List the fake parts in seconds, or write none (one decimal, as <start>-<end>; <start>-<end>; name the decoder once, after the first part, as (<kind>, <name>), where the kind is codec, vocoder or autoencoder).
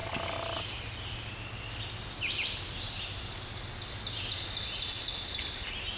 none